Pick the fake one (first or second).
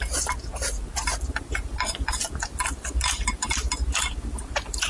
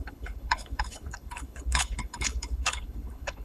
second